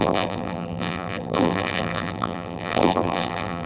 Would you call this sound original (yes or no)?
no